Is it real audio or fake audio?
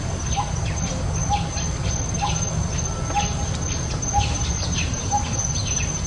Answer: real